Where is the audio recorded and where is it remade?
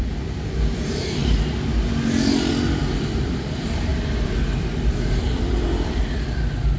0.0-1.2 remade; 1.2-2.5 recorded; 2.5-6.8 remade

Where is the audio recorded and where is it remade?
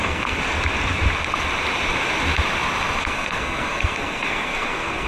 0.0-0.4 remade; 0.4-3.0 recorded; 3.0-5.1 remade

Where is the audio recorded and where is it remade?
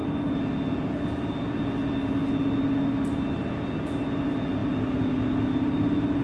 0.0-6.2 recorded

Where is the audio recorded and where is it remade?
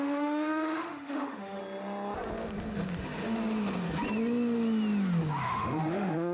0.0-1.6 remade; 1.6-5.4 recorded; 5.4-6.3 remade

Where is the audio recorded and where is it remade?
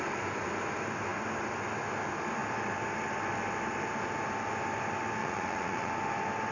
0.0-5.2 recorded; 5.2-5.9 remade; 5.9-6.5 recorded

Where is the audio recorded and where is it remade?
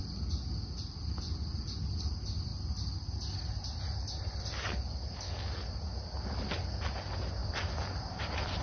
0.0-8.6 recorded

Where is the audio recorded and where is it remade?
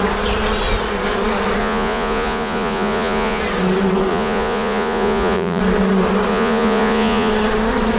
0.0-1.6 recorded; 1.6-3.4 remade; 3.4-4.1 recorded; 4.1-5.6 remade; 5.6-6.3 recorded; 6.3-7.3 remade; 7.3-8.0 recorded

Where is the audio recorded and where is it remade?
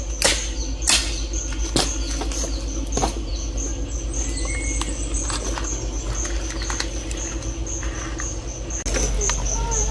0.0-9.9 recorded